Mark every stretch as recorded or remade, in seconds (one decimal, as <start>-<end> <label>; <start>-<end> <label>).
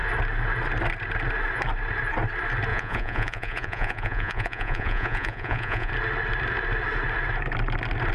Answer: 0.0-2.7 recorded; 2.7-5.9 remade; 5.9-8.1 recorded